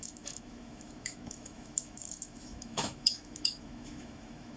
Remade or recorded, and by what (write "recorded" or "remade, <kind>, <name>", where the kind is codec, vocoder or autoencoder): remade, autoencoder, DAC-VAE